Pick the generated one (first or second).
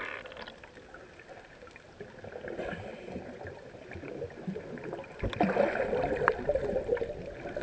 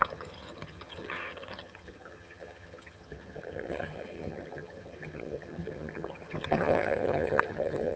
second